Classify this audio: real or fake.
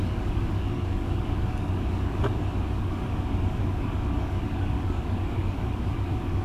fake